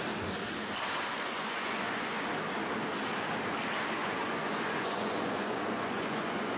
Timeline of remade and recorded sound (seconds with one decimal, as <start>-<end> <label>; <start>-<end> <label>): 0.0-1.1 recorded; 1.1-2.2 remade; 2.2-4.0 recorded; 4.0-6.6 remade